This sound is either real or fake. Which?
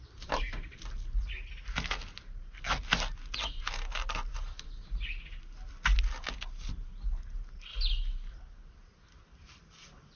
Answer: real